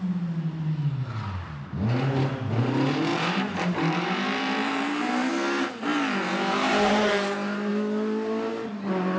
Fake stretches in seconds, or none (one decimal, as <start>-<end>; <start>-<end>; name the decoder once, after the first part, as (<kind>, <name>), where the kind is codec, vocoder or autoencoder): 3.1-5.3 (vocoder, BigVGAN v2); 5.9-6.9